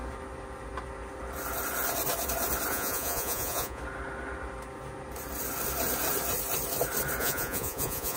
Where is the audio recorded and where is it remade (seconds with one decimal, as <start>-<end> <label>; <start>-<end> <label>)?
0.0-2.7 recorded; 2.7-3.8 remade; 3.8-7.2 recorded; 7.2-8.2 remade